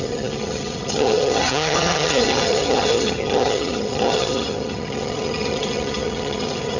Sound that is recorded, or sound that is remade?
remade